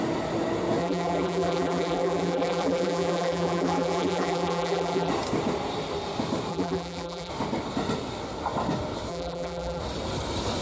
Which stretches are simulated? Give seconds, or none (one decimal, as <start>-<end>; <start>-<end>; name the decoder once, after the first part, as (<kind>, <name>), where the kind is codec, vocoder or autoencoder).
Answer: 0.8-5.1 (vocoder, BigVGAN v2); 6.5-7.3; 9.1-9.8